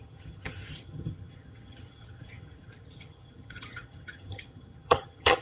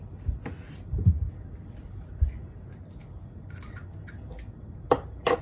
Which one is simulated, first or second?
first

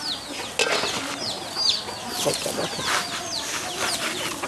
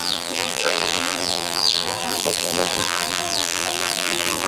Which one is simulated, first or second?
second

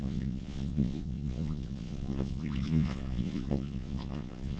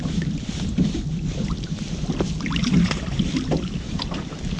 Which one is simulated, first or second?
first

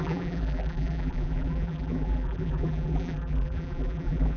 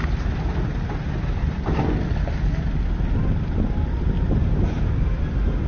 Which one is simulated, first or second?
first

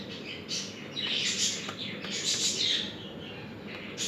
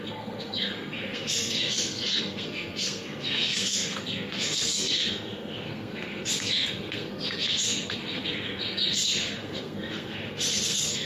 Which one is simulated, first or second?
second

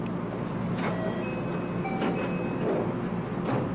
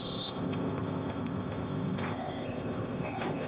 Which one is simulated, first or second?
second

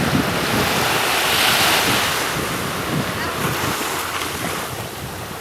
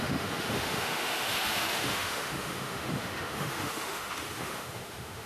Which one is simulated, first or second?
second